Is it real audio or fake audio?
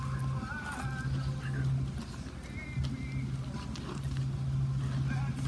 real